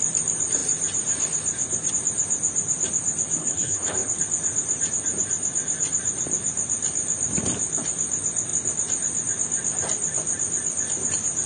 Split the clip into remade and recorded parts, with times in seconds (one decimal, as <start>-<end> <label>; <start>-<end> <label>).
0.0-3.4 recorded; 3.4-4.2 remade; 4.2-11.5 recorded